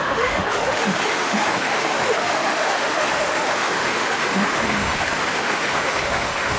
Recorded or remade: remade